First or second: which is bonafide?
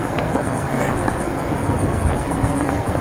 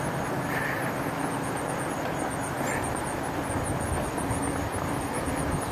second